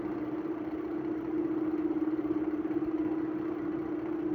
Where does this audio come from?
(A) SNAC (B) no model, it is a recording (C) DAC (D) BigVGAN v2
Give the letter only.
D